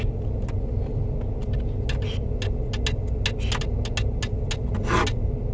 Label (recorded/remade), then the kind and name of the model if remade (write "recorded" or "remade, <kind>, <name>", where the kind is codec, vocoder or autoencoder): recorded